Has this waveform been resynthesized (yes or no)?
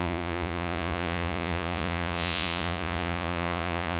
yes